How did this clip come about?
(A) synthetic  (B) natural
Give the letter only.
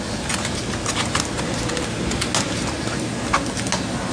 B